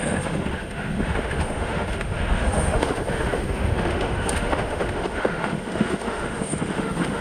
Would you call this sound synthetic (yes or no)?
yes